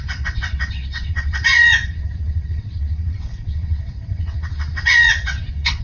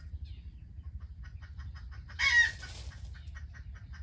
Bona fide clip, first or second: second